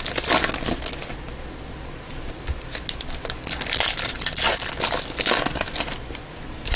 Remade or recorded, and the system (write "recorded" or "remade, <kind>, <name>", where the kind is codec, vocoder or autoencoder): recorded